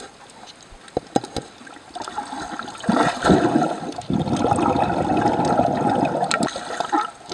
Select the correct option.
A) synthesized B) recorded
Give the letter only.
B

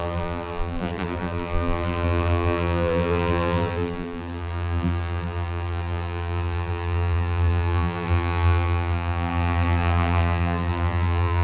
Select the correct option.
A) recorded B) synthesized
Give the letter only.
B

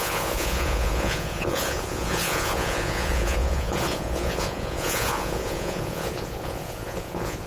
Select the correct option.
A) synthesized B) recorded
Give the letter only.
A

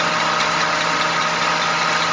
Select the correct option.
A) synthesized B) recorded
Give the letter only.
B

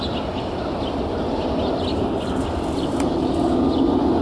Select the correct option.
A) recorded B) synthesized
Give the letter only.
A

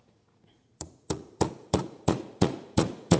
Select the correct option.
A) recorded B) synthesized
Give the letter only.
B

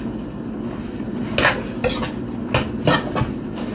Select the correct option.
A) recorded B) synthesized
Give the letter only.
A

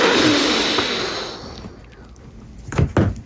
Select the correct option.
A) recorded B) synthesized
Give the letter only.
A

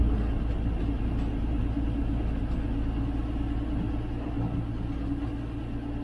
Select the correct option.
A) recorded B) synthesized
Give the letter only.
A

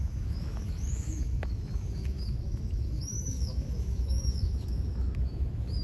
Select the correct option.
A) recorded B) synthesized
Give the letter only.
B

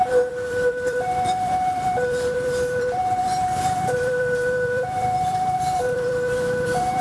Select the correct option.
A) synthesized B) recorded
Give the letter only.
A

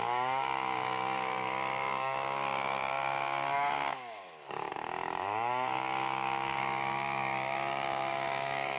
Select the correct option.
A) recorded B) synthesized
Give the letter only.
B